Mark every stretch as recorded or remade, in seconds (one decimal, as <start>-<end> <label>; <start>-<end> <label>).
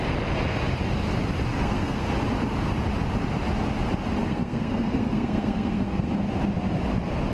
0.0-1.5 recorded; 1.5-2.1 remade; 2.1-4.2 recorded; 4.2-6.1 remade; 6.1-7.3 recorded